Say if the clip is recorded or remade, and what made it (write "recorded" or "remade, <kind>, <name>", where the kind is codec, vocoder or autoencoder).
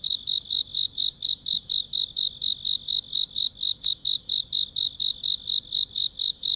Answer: recorded